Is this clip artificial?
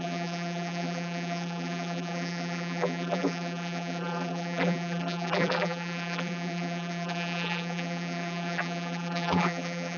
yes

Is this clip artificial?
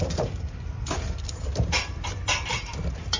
yes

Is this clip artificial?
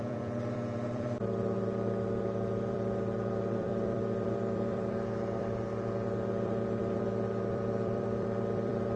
yes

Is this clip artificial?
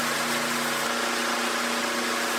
no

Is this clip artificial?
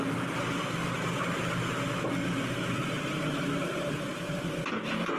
no